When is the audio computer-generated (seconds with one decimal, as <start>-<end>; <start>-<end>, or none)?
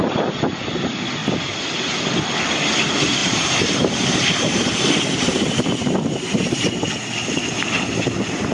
3.2-4.8; 5.3-6.7